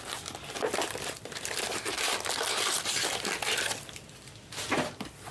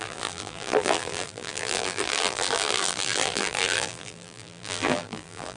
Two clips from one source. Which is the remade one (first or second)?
second